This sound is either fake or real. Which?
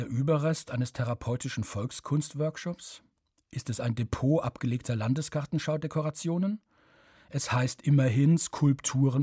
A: real